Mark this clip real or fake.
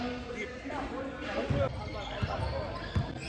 real